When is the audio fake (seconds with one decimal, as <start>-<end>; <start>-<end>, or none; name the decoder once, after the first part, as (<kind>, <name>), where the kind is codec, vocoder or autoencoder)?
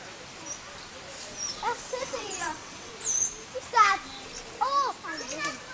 2.0-2.9 (vocoder, WaveNeXt)